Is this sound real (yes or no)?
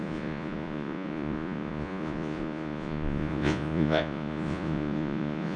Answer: no